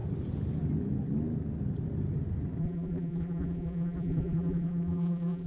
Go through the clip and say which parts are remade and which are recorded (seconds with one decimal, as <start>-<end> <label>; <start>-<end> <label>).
0.0-2.6 recorded; 2.6-5.5 remade